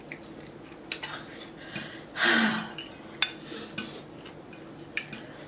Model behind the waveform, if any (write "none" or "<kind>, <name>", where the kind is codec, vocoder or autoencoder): none